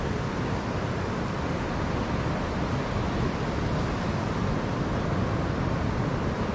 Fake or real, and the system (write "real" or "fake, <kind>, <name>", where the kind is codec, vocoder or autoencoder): real